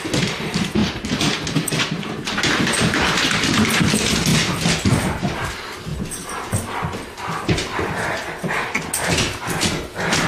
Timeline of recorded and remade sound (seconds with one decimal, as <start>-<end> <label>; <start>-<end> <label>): 0.0-0.8 recorded; 0.8-3.4 remade; 3.4-4.3 recorded; 4.3-5.5 remade; 5.5-10.3 recorded